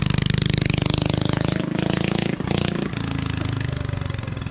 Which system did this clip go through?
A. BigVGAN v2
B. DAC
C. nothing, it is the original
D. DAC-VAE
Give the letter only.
C